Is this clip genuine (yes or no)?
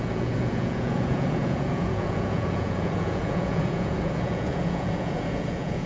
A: no